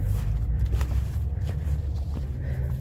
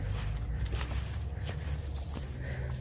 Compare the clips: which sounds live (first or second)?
second